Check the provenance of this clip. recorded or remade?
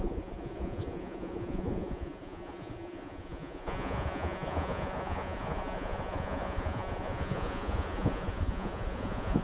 remade